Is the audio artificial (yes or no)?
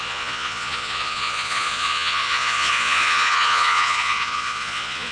yes